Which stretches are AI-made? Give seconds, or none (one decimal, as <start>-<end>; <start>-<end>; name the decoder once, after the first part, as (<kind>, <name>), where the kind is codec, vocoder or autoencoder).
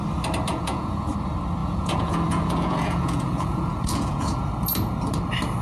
0.5-1.1 (vocoder, Vocos); 1.6-4.5